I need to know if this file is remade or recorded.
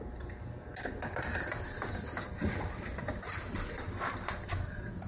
recorded